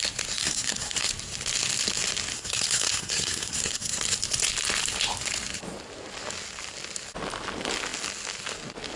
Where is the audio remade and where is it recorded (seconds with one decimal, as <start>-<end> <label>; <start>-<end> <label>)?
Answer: 0.0-0.4 recorded; 0.4-1.1 remade; 1.1-2.3 recorded; 2.3-4.0 remade; 4.0-9.0 recorded